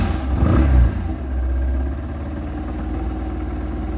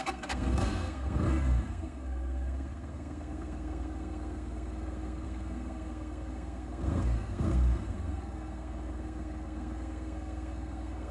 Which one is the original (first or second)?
first